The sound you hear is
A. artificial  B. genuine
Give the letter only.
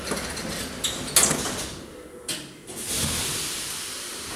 B